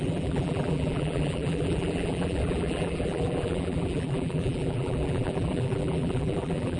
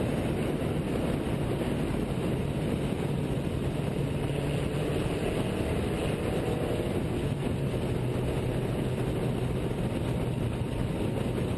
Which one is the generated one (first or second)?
first